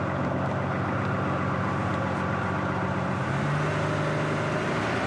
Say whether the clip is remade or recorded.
recorded